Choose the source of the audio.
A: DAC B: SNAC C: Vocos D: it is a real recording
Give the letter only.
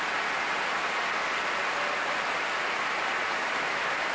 D